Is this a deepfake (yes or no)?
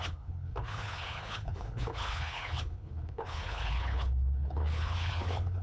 yes